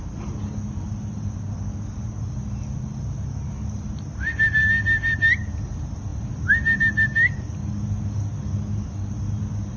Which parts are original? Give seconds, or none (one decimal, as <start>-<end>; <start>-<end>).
0.0-9.8